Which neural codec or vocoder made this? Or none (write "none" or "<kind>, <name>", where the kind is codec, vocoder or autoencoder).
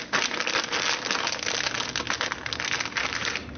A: none